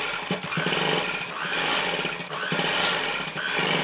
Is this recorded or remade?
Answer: recorded